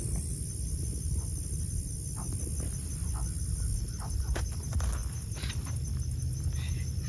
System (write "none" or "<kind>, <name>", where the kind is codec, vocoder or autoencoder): none